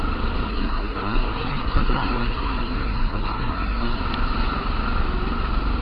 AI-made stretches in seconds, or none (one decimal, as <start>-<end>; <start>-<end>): 0.5-4.0